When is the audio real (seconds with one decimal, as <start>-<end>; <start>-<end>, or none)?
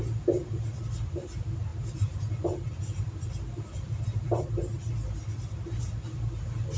0.0-6.8